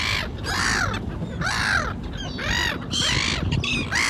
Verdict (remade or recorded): recorded